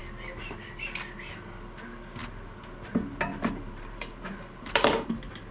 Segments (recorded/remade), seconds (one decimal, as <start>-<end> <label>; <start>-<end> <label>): 0.0-3.3 recorded; 3.3-5.5 remade